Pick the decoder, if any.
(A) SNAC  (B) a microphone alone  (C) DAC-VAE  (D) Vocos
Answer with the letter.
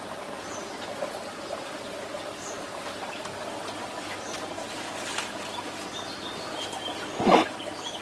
B